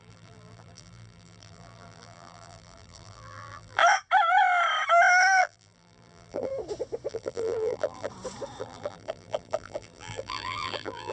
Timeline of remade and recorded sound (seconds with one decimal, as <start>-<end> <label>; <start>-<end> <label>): 0.0-3.8 remade; 3.8-5.4 recorded; 5.4-6.5 remade; 6.5-7.1 recorded; 7.1-8.1 remade; 8.1-8.6 recorded; 8.6-11.1 remade